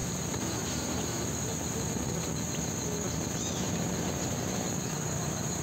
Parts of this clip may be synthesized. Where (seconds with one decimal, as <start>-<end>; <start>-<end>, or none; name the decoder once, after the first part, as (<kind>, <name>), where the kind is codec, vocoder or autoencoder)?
none